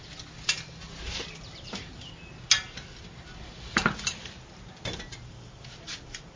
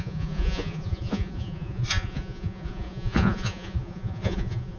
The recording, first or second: first